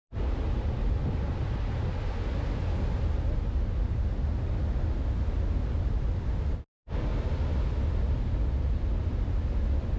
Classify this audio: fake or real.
real